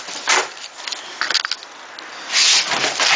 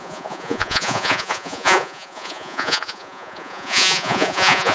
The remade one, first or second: second